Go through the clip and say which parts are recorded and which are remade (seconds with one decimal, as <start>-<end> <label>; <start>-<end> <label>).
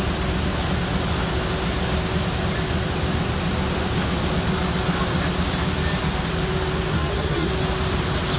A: 0.0-6.9 recorded; 6.9-7.5 remade; 7.5-8.4 recorded